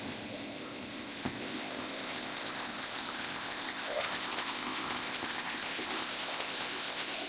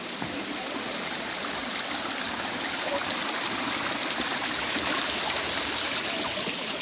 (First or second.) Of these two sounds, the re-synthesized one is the first